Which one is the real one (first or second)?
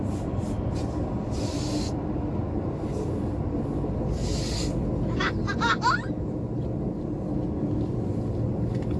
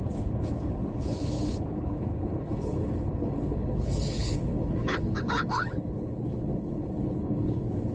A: first